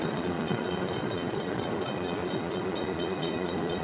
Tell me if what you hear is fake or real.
fake